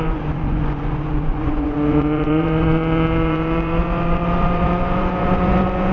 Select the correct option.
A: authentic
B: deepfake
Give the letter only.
B